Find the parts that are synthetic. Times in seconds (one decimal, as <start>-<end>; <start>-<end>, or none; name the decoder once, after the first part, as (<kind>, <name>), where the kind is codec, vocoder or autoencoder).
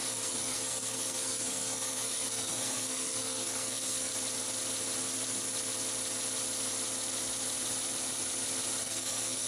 0.0-4.1 (codec, SNAC); 8.8-9.5